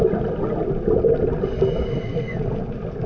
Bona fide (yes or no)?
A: yes